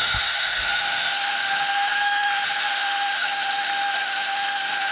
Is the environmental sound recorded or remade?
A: remade